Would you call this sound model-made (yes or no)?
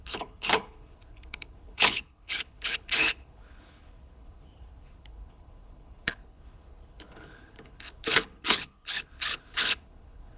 yes